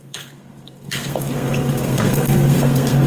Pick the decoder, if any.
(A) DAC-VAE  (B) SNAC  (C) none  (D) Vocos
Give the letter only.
B